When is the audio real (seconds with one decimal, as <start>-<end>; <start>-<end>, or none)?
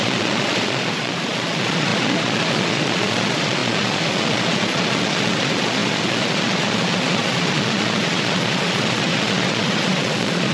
none